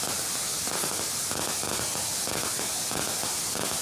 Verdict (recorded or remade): recorded